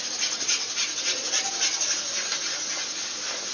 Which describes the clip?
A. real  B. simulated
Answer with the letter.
A